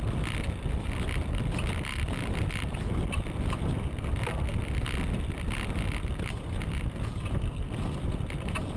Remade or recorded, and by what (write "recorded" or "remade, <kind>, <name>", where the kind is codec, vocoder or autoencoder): recorded